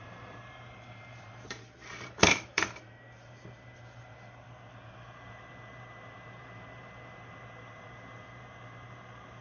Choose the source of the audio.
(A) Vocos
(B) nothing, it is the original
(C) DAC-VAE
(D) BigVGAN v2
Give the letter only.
D